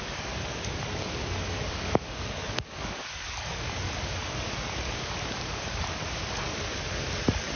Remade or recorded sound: remade